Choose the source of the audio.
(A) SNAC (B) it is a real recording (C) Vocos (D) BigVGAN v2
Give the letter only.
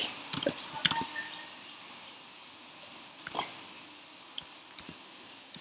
B